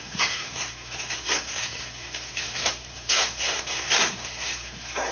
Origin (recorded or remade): remade